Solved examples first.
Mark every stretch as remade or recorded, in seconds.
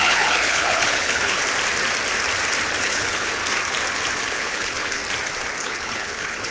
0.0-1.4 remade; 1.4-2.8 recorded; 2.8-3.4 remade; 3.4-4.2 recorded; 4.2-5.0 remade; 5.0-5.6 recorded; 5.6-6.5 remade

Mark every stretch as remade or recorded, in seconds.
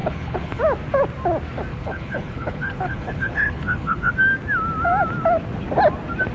0.0-0.6 remade; 0.6-1.7 recorded; 1.7-4.1 remade; 4.1-6.3 recorded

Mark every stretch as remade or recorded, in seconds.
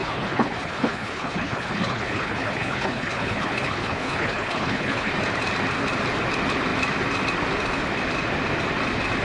0.0-5.1 remade; 5.1-9.2 recorded